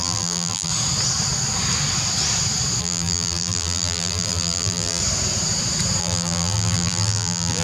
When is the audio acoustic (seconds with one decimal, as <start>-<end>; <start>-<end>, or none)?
0.7-2.8; 5.0-6.0